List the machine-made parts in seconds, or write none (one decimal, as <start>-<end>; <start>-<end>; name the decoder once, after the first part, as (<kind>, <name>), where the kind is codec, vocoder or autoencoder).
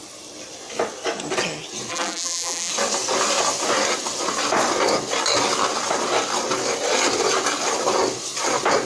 1.9-2.7 (vocoder, BigVGAN v2)